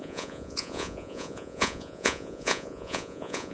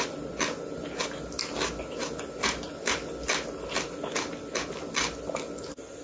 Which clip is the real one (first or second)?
second